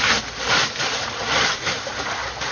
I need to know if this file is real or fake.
real